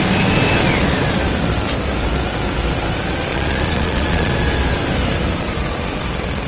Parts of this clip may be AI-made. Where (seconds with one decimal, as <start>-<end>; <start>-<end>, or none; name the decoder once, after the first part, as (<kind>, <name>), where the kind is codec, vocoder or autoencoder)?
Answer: 3.3-4.3 (vocoder, Vocos)

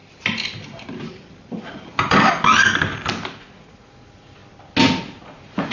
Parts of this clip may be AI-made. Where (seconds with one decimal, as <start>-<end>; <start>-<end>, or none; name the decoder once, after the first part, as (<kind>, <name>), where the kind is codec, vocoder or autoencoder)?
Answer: 3.4-4.4 (vocoder, Vocos); 5.0-5.7